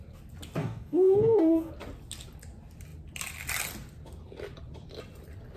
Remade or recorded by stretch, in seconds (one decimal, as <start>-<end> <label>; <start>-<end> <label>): 0.0-0.6 recorded; 0.6-1.7 remade; 1.7-5.6 recorded